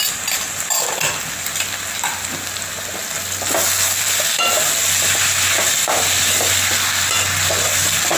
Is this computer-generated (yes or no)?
no